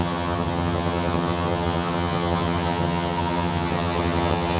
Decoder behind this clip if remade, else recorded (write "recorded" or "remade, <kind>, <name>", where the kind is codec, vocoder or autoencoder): remade, vocoder, HiFi-GAN